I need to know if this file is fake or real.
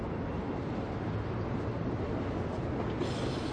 real